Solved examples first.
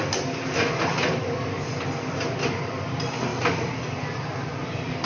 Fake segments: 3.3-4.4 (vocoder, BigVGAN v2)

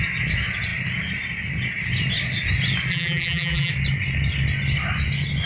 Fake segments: 2.9-3.7 (vocoder, BigVGAN v2)

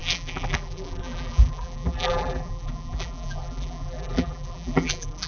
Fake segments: 0.0-5.3 (vocoder, BigVGAN v2)

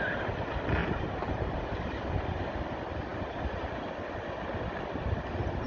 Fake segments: 0.8-1.6 (vocoder, BigVGAN v2)

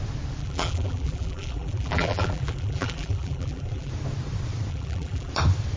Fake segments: 0.4-3.9 (vocoder, BigVGAN v2); 4.7-5.3

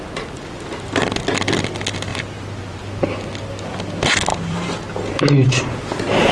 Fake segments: 2.1-2.8 (vocoder, BigVGAN v2); 4.3-4.9

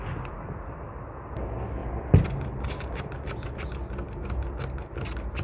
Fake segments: none